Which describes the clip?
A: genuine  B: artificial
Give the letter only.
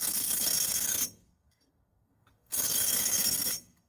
B